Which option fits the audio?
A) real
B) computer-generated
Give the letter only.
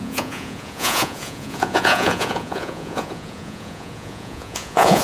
B